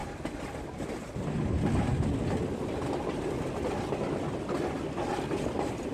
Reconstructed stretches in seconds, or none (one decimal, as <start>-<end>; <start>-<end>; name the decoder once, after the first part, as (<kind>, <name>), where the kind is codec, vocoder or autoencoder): none

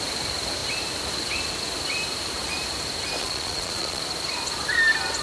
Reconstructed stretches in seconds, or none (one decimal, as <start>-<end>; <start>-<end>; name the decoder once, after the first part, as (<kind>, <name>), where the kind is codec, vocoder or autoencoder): 3.2-4.0 (vocoder, Vocos)

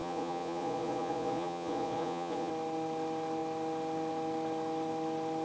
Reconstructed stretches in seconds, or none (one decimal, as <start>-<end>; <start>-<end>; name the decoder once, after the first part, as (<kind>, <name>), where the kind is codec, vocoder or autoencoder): 0.0-2.5 (vocoder, Vocos)